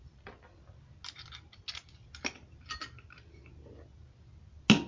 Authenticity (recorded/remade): recorded